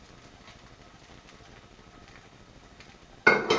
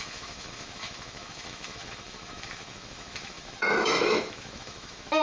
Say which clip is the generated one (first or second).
second